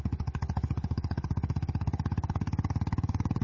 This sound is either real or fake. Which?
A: fake